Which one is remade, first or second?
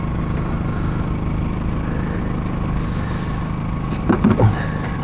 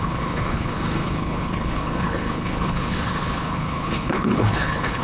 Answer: second